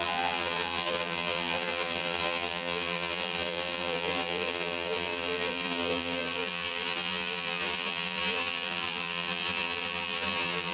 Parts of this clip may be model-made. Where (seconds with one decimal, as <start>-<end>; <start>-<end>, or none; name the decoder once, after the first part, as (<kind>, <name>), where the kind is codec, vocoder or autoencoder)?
0.0-10.7 (vocoder, BigVGAN v2)

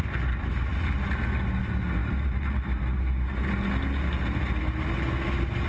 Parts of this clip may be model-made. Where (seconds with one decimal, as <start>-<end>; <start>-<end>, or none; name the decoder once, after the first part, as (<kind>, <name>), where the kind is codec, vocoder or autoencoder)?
none

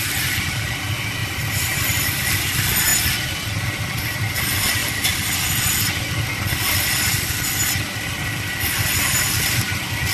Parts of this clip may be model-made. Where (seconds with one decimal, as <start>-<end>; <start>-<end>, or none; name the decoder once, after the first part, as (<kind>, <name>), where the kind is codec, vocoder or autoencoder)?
1.2-2.2 (vocoder, BigVGAN v2)

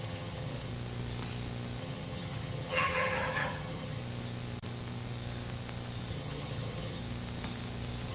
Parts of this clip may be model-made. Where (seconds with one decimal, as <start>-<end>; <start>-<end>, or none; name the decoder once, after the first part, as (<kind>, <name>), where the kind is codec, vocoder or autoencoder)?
0.0-0.7 (vocoder, HiFi-GAN); 1.8-4.0; 6.1-7.0

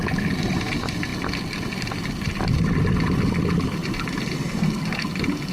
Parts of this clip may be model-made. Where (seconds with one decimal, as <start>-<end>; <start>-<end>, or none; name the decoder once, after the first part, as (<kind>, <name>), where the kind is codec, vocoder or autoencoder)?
none